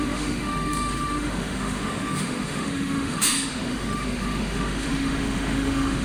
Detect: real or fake fake